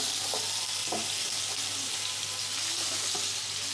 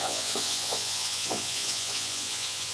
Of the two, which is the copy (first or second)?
second